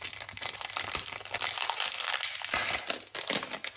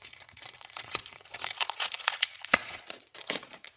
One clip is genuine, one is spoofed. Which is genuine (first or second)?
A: first